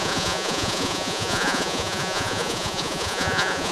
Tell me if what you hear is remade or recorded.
remade